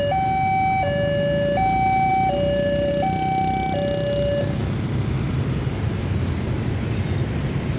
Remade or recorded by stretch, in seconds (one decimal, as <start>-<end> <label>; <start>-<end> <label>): 0.0-7.8 recorded